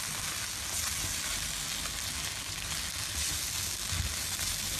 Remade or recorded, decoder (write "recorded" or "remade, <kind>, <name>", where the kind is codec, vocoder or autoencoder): recorded